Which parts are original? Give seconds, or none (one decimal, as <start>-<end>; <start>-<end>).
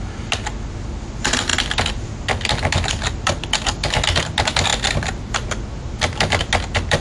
0.0-7.0